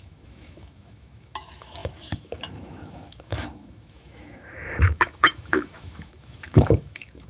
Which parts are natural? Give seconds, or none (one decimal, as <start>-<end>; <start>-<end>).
none